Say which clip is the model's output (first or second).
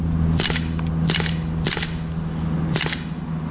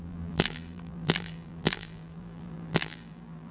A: second